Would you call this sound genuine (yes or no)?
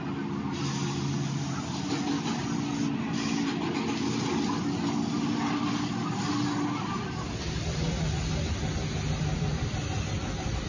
yes